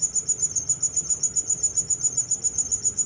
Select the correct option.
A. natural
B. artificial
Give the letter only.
B